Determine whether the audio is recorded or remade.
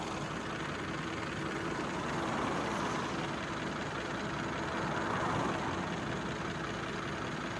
recorded